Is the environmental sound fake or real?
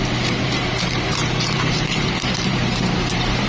fake